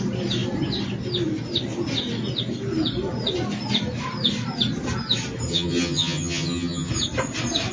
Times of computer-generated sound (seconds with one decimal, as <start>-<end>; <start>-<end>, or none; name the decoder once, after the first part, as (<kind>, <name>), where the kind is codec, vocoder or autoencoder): 5.5-6.9 (vocoder, HiFi-GAN)

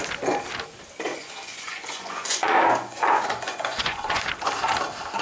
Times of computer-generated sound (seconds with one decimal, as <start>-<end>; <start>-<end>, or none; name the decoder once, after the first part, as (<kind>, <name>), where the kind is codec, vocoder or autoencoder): 1.1-4.2 (vocoder, Vocos)

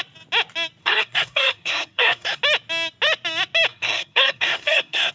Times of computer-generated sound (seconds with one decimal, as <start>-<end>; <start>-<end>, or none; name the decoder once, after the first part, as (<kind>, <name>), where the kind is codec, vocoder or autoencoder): 0.8-2.4 (codec, SNAC); 3.7-5.1